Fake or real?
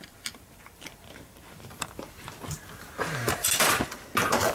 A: fake